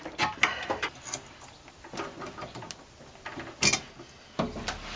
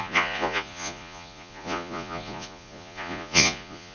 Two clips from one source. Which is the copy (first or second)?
second